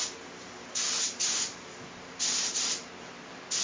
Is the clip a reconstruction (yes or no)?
no